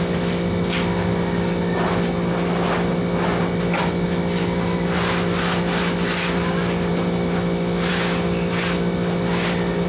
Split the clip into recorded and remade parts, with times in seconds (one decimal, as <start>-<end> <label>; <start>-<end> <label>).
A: 0.0-6.9 recorded; 6.9-7.9 remade; 7.9-9.9 recorded